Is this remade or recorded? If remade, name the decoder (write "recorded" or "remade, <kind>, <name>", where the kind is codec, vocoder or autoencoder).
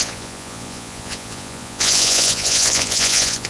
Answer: remade, vocoder, Vocos